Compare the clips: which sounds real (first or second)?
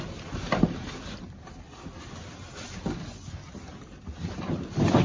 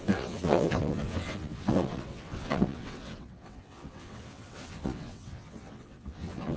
first